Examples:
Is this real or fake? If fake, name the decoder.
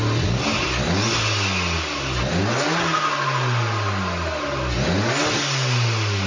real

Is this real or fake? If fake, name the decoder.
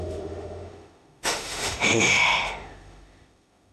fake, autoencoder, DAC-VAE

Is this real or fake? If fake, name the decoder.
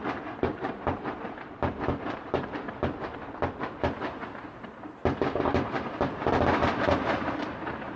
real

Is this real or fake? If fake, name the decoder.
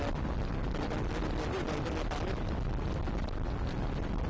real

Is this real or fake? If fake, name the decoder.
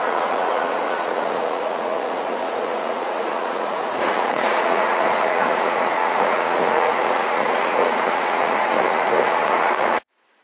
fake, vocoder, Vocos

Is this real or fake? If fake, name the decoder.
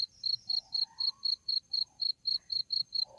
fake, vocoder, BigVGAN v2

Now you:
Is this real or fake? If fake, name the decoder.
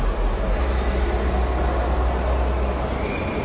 real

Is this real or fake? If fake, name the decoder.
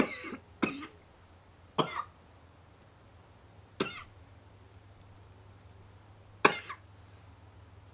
real